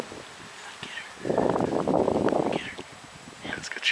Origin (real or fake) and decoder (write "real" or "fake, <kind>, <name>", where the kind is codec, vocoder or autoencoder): real